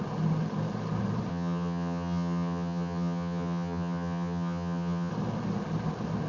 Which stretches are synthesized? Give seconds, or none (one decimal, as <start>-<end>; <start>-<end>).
1.3-5.1